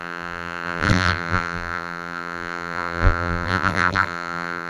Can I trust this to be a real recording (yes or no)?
no